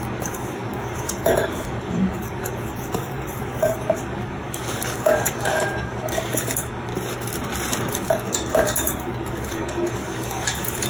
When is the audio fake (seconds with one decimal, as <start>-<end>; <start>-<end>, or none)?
0.0-6.9; 7.9-10.9